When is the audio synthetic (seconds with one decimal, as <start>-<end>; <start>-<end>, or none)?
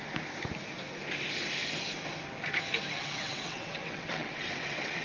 3.0-5.0